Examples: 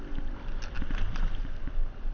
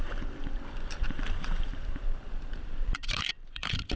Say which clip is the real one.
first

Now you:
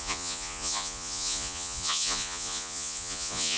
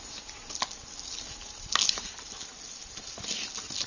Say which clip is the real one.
second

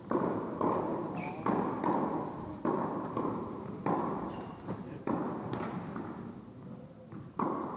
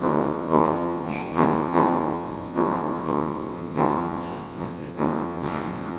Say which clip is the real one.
first